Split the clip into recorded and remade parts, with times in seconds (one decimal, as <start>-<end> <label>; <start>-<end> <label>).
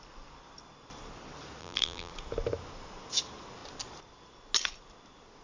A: 0.0-1.6 recorded; 1.6-2.1 remade; 2.1-5.4 recorded